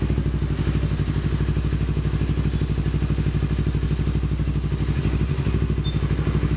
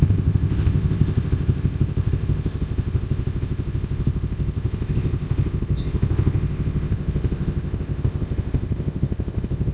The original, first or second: first